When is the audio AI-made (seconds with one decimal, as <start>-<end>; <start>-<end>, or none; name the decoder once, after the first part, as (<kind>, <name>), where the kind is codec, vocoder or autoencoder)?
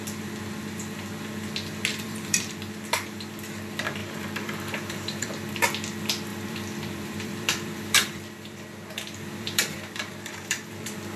1.9-2.5 (vocoder, BigVGAN v2); 4.0-5.5; 6.3-11.2